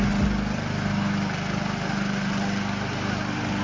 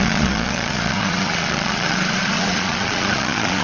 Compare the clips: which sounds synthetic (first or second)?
second